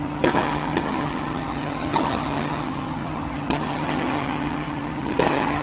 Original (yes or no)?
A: no